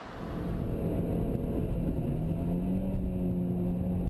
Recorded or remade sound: recorded